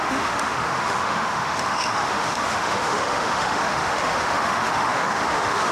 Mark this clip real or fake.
fake